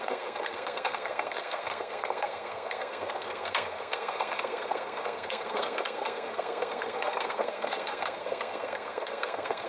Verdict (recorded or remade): remade